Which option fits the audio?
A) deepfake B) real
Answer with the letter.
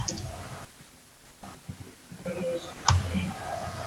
B